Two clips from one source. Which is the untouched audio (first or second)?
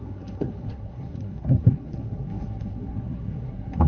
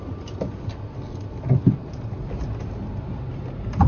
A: second